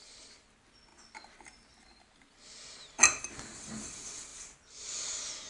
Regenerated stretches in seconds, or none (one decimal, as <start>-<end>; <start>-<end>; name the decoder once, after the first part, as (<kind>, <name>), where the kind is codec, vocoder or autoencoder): none